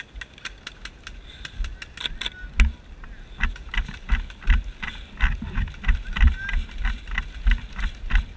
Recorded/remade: recorded